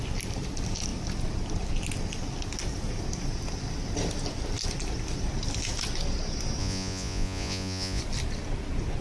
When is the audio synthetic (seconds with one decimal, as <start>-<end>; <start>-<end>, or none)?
6.6-8.0